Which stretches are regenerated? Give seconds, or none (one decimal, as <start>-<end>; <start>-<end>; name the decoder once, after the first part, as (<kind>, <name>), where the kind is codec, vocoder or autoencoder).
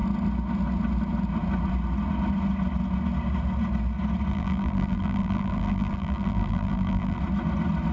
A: 4.3-7.2 (vocoder, BigVGAN v2)